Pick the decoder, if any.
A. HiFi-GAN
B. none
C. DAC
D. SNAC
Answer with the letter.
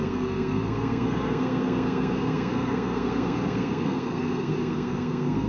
D